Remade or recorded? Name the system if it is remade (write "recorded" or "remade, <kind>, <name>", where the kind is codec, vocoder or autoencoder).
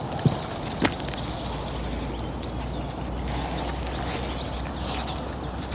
recorded